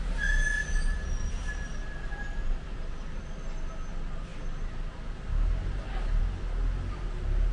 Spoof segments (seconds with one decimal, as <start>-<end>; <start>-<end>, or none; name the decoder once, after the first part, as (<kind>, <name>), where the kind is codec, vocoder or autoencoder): none